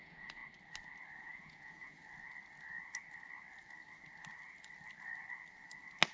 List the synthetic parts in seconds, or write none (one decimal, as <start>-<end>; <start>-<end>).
0.0-0.4; 1.2-2.0